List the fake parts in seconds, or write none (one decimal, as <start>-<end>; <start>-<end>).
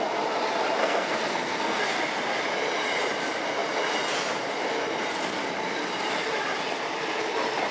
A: 0.8-1.8